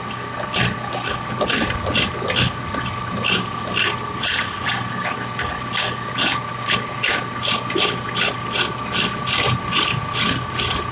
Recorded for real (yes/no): yes